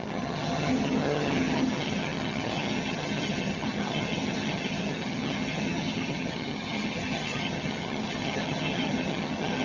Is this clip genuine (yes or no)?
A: no